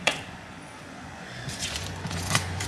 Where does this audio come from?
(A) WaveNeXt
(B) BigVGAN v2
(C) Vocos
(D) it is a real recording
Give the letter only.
C